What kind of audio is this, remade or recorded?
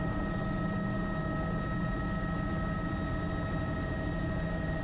recorded